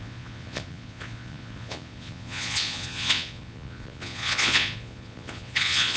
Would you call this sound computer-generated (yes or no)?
yes